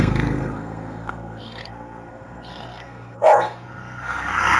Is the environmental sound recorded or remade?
remade